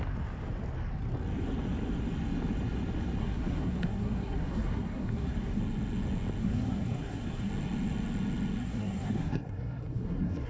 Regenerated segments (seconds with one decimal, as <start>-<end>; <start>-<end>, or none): 3.2-5.6; 6.4-7.5; 8.6-10.5